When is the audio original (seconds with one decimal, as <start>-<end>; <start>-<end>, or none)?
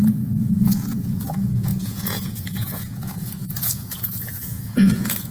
none